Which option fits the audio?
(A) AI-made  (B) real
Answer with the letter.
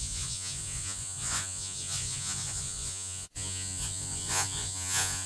A